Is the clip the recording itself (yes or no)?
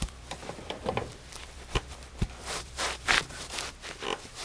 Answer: no